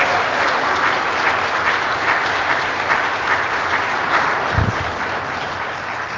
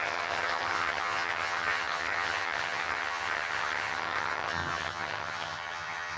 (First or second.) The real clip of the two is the first